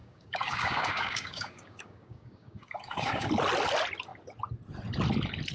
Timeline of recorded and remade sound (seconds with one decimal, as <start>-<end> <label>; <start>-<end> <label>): 0.0-3.3 remade; 3.3-5.5 recorded